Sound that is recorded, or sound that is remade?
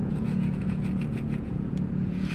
remade